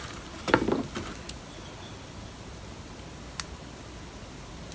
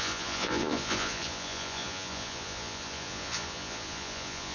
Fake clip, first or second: second